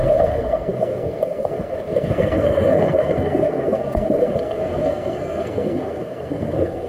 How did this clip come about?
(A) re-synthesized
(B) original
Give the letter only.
A